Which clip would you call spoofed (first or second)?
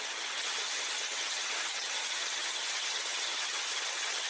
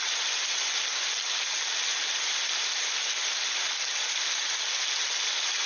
first